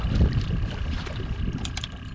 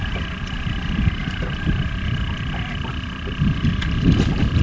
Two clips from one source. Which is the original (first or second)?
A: first